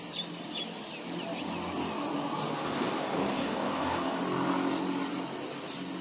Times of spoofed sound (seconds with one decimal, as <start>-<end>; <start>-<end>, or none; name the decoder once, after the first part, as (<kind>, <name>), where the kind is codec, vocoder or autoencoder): 2.6-4.2 (codec, DAC)